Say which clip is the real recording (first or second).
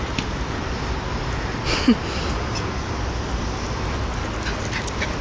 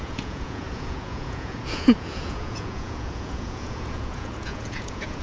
first